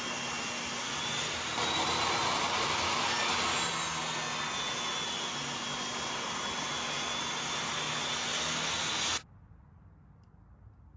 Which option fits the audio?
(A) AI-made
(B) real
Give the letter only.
B